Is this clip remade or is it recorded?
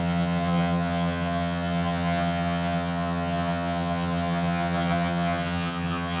remade